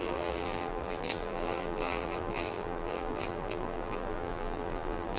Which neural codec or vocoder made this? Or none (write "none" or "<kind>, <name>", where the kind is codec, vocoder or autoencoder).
vocoder, BigVGAN v2